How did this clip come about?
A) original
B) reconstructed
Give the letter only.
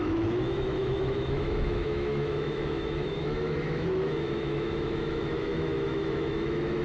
B